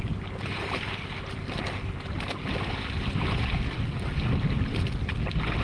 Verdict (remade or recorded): recorded